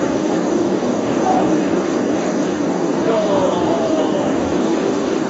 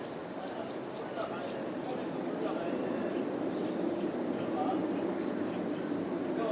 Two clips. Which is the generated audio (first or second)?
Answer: first